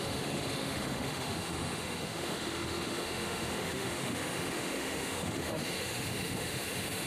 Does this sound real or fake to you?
fake